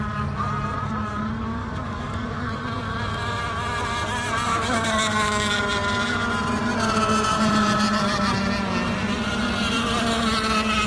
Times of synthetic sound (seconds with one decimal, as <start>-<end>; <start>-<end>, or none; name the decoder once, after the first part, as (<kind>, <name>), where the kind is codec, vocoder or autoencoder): 1.6-2.6 (codec, DAC); 4.5-5.5

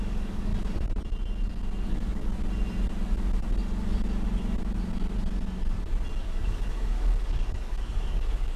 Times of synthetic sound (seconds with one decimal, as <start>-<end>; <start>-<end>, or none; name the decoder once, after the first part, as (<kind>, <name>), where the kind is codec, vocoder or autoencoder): 0.0-0.5 (codec, DAC); 1.9-2.3; 6.2-8.6

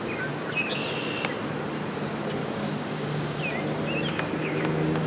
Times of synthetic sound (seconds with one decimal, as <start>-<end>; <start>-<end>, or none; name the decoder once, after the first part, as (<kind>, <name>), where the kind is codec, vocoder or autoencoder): 2.4-3.4 (codec, DAC); 4.4-5.1

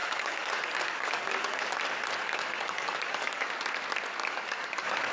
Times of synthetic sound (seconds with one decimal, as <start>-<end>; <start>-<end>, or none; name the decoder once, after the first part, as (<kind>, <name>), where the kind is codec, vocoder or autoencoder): 0.0-1.6 (codec, DAC); 2.2-3.5; 4.2-5.1

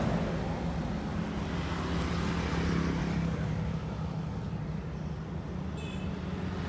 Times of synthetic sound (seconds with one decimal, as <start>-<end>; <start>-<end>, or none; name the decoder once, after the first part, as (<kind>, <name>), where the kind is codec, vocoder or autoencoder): 3.0-4.4 (codec, DAC)